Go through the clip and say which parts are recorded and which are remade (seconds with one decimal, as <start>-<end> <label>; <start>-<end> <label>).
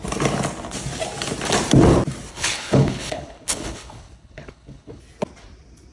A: 0.0-2.3 recorded; 2.3-5.0 remade; 5.0-5.9 recorded